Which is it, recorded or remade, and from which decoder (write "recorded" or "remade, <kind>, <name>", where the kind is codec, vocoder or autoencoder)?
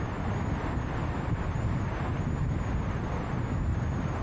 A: recorded